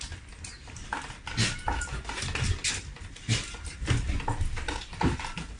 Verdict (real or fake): real